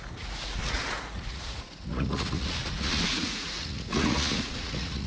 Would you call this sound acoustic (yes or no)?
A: no